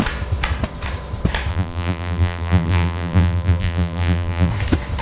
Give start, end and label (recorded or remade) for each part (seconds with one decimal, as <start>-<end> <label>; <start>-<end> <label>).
0.0-1.5 recorded; 1.5-4.5 remade; 4.5-5.0 recorded